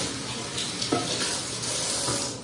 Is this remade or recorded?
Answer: recorded